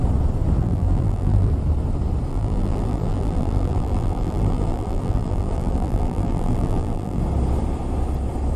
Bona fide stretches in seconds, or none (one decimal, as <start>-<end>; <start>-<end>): 0.0-0.6; 1.5-2.3; 7.2-8.6